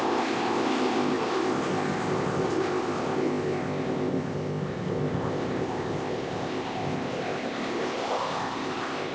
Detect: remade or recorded remade